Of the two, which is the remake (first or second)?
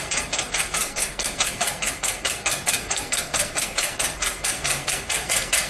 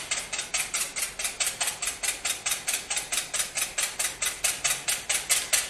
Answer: first